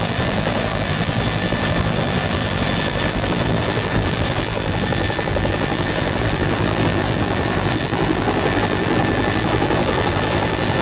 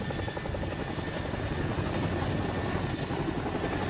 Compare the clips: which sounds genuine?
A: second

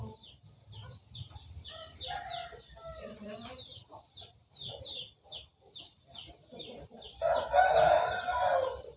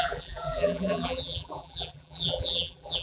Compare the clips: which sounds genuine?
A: first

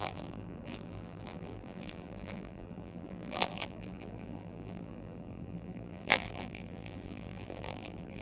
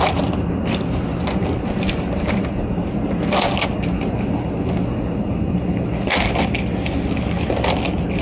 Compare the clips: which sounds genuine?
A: second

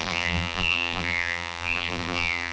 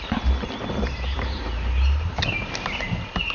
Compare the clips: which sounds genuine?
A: second